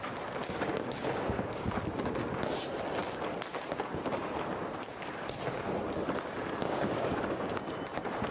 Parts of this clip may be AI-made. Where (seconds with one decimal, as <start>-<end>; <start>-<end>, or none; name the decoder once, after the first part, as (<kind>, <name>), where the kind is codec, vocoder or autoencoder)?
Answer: 0.4-1.7 (codec, DAC); 6.6-7.6